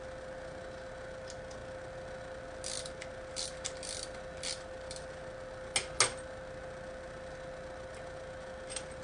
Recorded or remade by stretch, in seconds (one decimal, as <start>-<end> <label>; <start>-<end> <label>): 0.0-9.0 recorded